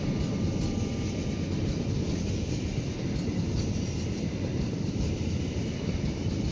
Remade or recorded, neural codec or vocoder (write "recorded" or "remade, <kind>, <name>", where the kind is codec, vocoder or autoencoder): recorded